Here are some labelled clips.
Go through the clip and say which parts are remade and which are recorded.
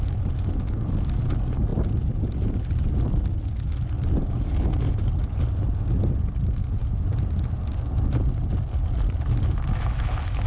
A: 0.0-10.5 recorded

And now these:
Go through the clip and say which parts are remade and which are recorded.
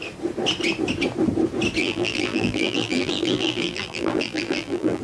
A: 0.0-1.8 recorded; 1.8-5.0 remade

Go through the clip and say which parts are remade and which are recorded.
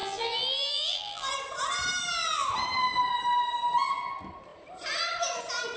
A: 0.0-1.3 remade; 1.3-5.8 recorded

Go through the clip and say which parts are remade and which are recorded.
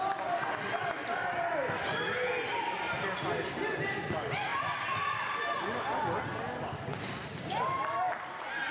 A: 0.0-0.8 recorded; 0.8-1.4 remade; 1.4-8.7 recorded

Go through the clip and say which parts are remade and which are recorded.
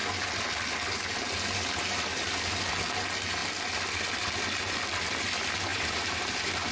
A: 0.0-5.7 recorded; 5.7-6.7 remade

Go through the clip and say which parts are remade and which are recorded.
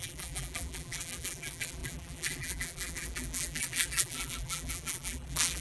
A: 0.0-5.6 remade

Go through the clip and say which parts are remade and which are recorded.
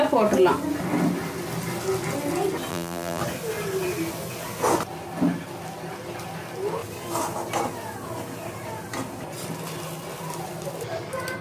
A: 0.0-2.7 recorded; 2.7-3.2 remade; 3.2-11.4 recorded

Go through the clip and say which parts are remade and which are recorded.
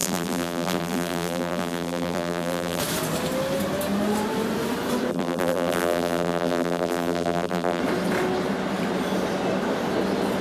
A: 0.0-2.8 remade; 2.8-5.1 recorded; 5.1-7.8 remade; 7.8-10.4 recorded